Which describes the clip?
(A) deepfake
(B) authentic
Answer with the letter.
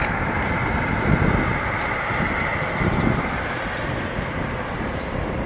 B